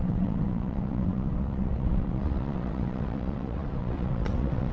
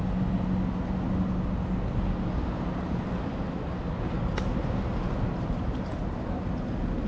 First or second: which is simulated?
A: first